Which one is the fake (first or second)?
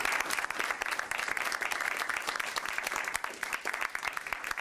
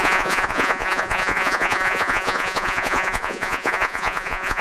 second